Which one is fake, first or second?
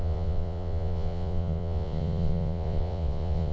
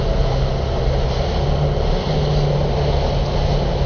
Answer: first